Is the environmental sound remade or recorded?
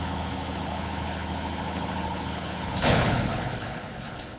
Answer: remade